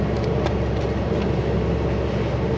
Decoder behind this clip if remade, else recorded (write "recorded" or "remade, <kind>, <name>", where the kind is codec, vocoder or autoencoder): recorded